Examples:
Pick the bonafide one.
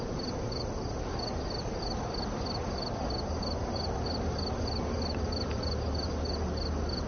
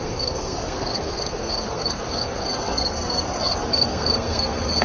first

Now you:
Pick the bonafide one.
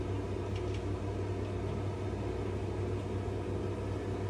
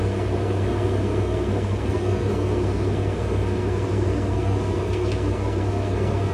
first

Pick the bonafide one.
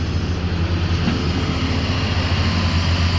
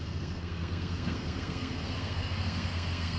first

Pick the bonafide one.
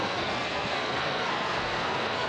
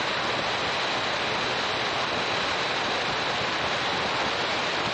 second